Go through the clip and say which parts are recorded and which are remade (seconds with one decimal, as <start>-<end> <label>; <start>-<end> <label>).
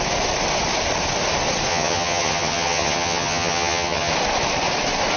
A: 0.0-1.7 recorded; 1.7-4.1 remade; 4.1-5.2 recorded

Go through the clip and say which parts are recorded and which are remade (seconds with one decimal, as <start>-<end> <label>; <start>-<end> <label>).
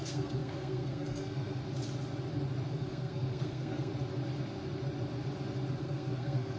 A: 0.0-1.6 remade; 1.6-2.7 recorded; 2.7-3.9 remade; 3.9-5.8 recorded; 5.8-6.6 remade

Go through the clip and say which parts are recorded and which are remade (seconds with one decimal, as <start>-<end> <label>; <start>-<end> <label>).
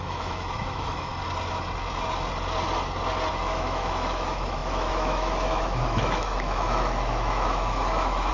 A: 0.0-1.1 remade; 1.1-3.3 recorded; 3.3-8.3 remade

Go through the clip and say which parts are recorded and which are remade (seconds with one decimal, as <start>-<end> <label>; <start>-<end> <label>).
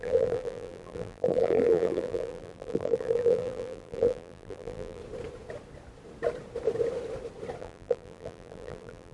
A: 0.0-5.0 remade; 5.0-7.6 recorded; 7.6-9.1 remade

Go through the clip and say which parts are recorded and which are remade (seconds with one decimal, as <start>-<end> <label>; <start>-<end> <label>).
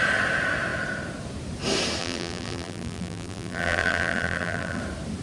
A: 0.0-2.0 recorded; 2.0-4.8 remade; 4.8-5.2 recorded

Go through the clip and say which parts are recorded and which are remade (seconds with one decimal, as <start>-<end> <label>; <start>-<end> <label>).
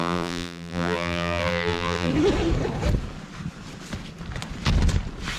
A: 0.0-2.1 remade; 2.1-5.4 recorded